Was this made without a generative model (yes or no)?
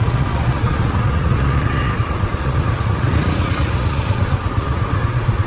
no